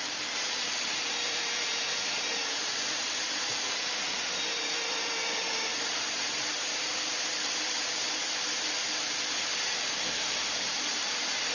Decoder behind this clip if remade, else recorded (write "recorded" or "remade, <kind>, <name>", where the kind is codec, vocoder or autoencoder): remade, vocoder, BigVGAN v2